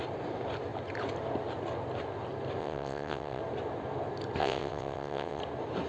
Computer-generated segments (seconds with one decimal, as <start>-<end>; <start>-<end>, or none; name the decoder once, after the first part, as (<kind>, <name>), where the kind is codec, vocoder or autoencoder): 2.6-3.4 (vocoder, WaveNeXt); 4.4-5.4